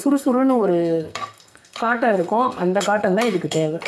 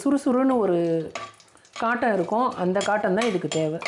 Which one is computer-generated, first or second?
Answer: first